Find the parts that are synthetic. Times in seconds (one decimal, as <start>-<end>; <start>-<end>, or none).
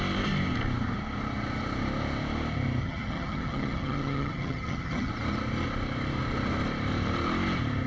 2.8-5.1